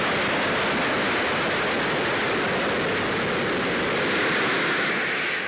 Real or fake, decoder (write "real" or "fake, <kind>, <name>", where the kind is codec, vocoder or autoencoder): real